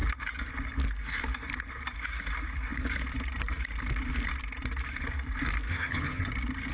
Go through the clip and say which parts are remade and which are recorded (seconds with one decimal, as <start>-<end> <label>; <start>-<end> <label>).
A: 0.0-5.7 recorded; 5.7-6.3 remade; 6.3-6.7 recorded